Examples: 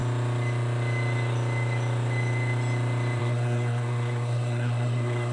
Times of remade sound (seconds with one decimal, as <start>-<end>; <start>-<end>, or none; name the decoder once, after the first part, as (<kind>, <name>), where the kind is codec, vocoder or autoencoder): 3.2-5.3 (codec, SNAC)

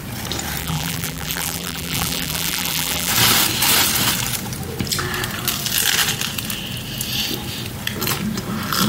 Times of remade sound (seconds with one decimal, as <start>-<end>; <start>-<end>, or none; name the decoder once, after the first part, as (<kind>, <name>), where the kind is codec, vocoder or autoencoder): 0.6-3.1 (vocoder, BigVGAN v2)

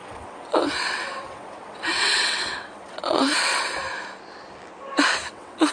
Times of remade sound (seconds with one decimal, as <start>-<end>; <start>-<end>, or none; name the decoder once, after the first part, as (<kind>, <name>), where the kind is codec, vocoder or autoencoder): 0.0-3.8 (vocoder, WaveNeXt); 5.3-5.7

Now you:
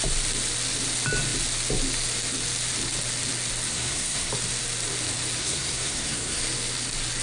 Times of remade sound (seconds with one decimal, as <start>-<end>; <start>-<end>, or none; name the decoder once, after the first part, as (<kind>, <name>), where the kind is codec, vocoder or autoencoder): 3.7-4.3 (codec, SNAC); 5.4-6.4

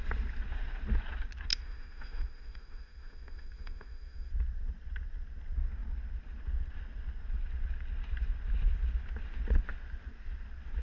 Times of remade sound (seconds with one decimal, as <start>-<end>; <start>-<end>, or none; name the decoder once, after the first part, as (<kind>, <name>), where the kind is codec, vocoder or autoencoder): 1.5-4.3 (autoencoder, DAC-VAE)

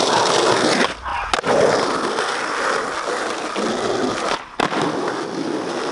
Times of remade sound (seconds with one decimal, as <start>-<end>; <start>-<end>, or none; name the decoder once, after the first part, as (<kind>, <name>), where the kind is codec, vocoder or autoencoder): none

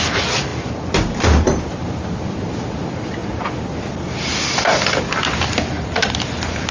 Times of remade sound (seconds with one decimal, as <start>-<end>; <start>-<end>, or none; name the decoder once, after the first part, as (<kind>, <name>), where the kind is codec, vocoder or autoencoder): none